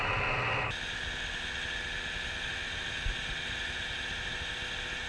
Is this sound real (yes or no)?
yes